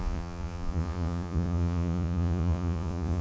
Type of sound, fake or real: fake